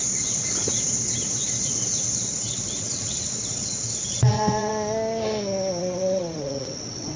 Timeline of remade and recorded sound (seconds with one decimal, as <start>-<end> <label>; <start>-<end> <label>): 0.0-4.7 remade; 4.7-5.8 recorded; 5.8-7.2 remade